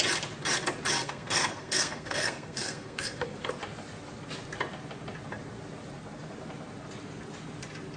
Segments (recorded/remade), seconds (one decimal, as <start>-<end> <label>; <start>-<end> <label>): 0.0-1.0 recorded; 1.0-3.5 remade; 3.5-8.0 recorded